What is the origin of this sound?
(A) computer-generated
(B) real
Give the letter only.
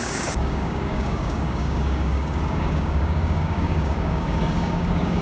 A